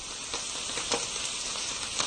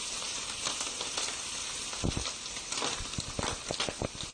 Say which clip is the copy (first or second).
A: second